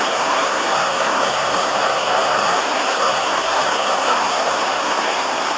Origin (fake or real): fake